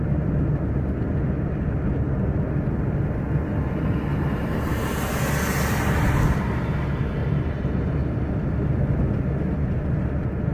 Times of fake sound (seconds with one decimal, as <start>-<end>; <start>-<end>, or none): 4.1-5.2; 7.2-8.0